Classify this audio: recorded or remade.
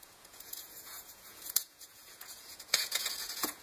remade